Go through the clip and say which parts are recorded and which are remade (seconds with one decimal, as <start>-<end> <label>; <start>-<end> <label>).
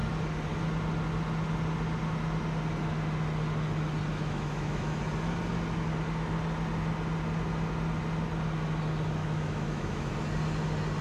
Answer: 0.0-4.1 recorded; 4.1-5.0 remade; 5.0-9.2 recorded; 9.2-10.1 remade; 10.1-11.0 recorded